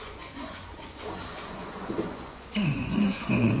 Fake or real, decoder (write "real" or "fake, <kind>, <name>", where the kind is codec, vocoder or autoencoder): fake, vocoder, Vocos